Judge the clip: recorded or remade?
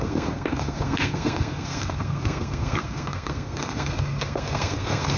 remade